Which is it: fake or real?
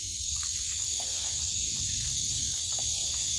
fake